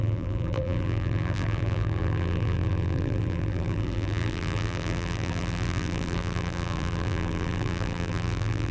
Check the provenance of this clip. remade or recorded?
remade